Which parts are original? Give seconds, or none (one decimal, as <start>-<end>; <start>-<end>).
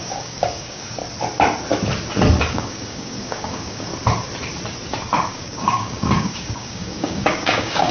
1.0-2.4; 3.9-5.3